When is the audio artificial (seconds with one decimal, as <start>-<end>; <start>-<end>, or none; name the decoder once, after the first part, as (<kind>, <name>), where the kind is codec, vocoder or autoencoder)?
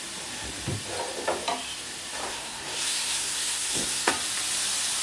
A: 2.3-4.1 (codec, SNAC)